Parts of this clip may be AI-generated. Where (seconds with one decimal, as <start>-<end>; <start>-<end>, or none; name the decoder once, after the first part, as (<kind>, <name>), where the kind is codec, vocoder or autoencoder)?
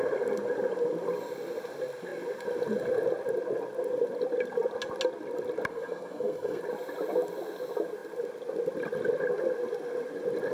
5.7-6.6 (codec, SNAC)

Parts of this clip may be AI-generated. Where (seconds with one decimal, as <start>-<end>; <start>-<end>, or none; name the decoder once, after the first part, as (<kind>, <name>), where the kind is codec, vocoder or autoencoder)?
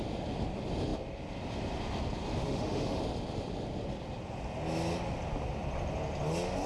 2.4-3.0 (autoencoder, DAC-VAE)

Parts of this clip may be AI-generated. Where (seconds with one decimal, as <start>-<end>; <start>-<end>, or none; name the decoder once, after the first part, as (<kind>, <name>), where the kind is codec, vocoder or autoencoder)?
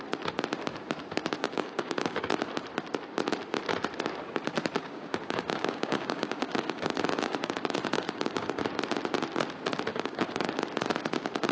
1.4-2.4 (codec, DAC); 4.8-8.6; 9.9-10.5